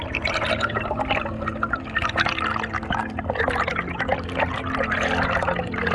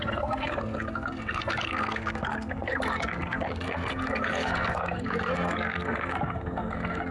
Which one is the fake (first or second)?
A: second